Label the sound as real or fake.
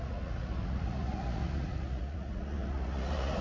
fake